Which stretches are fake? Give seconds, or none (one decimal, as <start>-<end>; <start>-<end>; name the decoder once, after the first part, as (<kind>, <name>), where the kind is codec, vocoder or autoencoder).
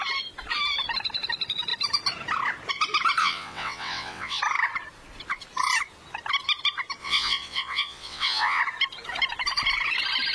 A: 3.2-4.4 (vocoder, WaveNeXt); 7.0-8.6